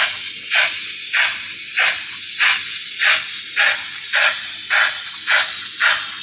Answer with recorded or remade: recorded